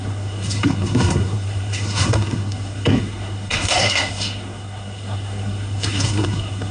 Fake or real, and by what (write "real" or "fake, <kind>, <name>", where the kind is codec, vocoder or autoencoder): fake, codec, SNAC